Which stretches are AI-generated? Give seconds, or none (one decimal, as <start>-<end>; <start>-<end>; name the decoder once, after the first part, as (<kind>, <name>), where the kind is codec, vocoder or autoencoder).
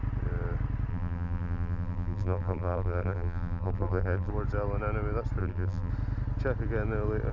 0.9-4.3 (vocoder, BigVGAN v2); 5.4-5.9